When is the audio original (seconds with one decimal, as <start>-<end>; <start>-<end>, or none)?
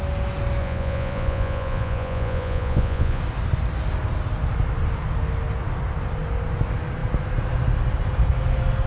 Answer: 0.0-0.6; 3.2-8.9